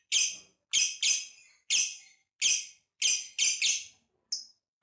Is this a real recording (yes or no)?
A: yes